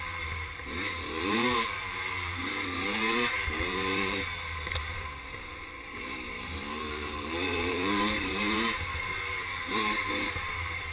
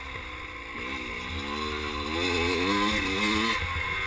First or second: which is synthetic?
first